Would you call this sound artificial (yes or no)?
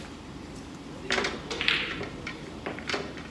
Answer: yes